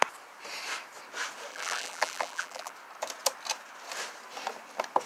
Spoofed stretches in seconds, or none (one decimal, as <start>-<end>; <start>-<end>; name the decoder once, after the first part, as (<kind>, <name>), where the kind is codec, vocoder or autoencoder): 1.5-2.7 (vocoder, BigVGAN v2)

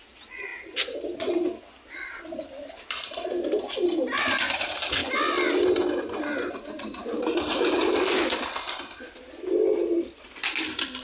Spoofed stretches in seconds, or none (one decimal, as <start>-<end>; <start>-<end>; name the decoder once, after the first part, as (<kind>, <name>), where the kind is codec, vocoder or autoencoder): 6.9-7.8 (vocoder, BigVGAN v2)

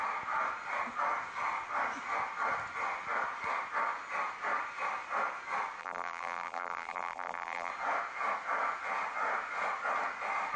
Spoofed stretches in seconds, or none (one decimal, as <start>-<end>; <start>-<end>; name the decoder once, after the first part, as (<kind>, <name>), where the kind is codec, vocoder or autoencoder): 5.8-7.7 (vocoder, BigVGAN v2)

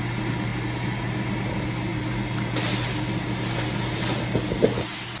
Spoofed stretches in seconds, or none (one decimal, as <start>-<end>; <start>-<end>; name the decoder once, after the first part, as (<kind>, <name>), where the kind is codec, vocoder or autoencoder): none

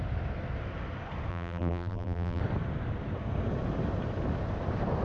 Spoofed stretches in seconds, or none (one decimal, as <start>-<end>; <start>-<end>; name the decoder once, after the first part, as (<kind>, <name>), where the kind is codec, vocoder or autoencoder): 1.3-2.4 (vocoder, BigVGAN v2)

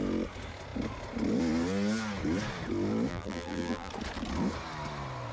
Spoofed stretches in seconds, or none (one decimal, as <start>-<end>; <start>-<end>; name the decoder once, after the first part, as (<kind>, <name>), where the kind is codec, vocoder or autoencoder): 3.1-3.9 (vocoder, BigVGAN v2)